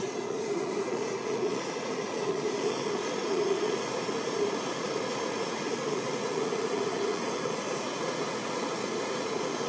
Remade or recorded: remade